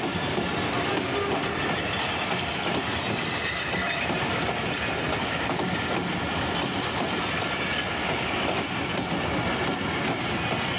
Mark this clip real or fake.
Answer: real